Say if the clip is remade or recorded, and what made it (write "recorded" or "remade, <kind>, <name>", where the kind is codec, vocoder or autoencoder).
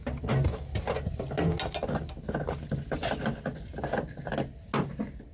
recorded